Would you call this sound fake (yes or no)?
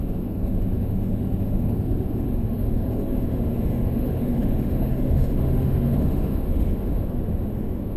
yes